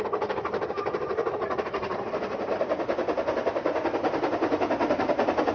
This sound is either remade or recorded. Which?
remade